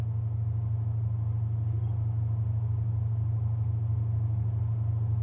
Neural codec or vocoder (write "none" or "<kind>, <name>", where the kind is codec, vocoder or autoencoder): none